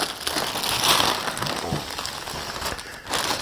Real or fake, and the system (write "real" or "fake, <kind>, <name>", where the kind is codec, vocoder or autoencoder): real